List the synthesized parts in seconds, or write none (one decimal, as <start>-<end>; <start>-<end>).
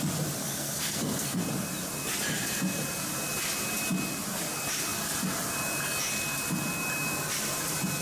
0.4-1.4